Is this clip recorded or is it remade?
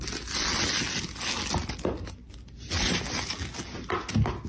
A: recorded